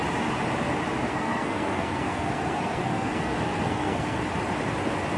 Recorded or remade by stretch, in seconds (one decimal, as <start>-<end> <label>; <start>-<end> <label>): 0.0-1.1 recorded; 1.1-4.2 remade; 4.2-5.2 recorded